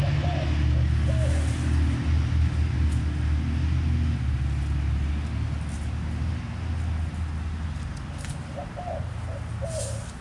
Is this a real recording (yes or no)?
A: yes